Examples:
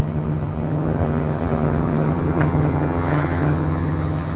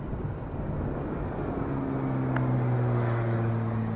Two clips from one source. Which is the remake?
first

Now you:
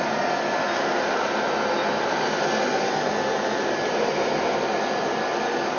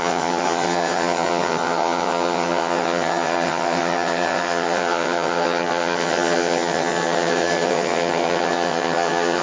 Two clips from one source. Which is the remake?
second